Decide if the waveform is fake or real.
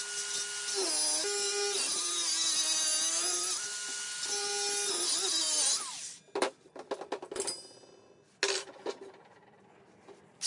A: real